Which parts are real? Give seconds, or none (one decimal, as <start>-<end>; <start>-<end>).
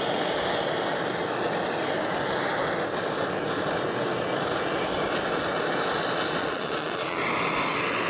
0.0-6.4; 7.2-8.1